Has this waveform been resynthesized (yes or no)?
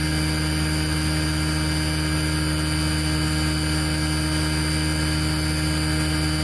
no